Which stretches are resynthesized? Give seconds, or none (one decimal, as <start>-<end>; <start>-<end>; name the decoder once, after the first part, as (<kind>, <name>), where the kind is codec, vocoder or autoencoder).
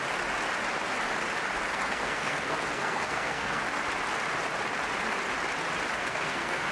1.7-3.6 (codec, SNAC); 6.0-6.7